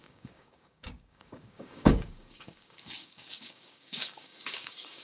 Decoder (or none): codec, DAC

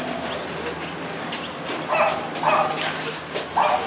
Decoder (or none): none